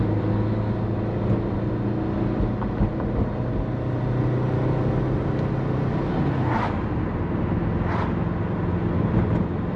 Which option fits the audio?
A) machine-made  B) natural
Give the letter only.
B